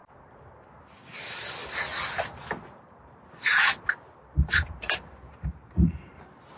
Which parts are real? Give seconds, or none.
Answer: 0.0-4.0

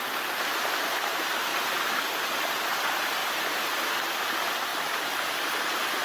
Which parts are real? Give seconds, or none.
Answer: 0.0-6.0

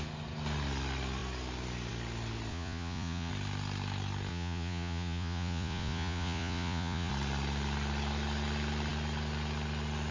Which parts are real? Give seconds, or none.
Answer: 0.0-2.5; 3.3-4.3; 7.1-10.1